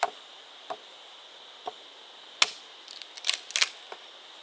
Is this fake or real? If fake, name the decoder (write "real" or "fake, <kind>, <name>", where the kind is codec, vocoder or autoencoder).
real